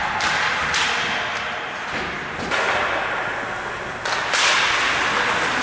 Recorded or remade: recorded